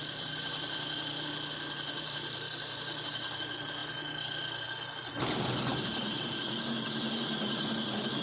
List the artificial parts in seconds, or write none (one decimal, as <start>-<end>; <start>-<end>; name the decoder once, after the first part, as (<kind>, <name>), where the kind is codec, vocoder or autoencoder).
0.0-3.8 (vocoder, BigVGAN v2); 5.2-8.2